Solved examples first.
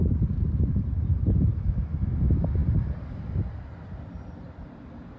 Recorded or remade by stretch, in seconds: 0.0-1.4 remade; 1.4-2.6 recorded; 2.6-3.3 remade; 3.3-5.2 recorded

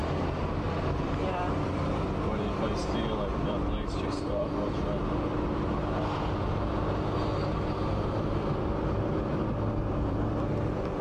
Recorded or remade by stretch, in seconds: 0.0-1.8 remade; 1.8-2.8 recorded; 2.8-6.7 remade; 6.7-7.4 recorded; 7.4-11.0 remade

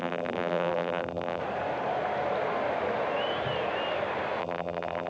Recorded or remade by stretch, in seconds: 0.0-1.4 remade; 1.4-4.4 recorded; 4.4-5.1 remade

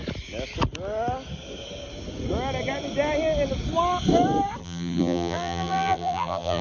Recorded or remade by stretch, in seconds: 0.0-4.6 recorded; 4.6-6.6 remade

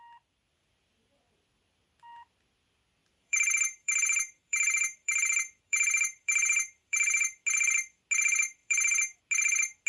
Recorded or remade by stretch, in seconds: 0.0-3.0 recorded; 3.0-7.4 remade; 7.4-8.6 recorded; 8.6-9.2 remade; 9.2-9.9 recorded

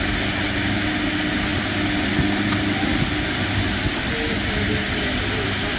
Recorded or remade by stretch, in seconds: 0.0-5.8 recorded